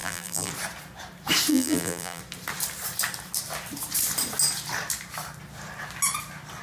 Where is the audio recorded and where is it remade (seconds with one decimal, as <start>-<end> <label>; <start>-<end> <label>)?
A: 0.0-0.5 remade; 0.5-1.5 recorded; 1.5-2.2 remade; 2.2-6.6 recorded